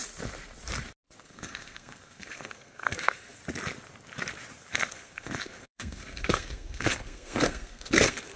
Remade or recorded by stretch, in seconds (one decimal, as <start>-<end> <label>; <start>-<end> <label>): 0.0-1.2 recorded; 1.2-3.4 remade; 3.4-4.7 recorded; 4.7-8.4 remade